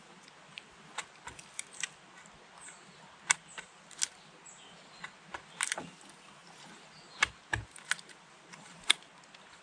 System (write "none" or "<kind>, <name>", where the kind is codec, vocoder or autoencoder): none